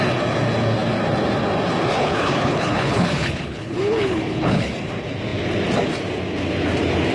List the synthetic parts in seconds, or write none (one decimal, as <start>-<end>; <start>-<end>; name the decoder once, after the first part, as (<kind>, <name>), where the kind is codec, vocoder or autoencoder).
2.0-4.7 (codec, HILCodec)